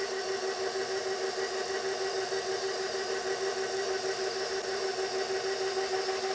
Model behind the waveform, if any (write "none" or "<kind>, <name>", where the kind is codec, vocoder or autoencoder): none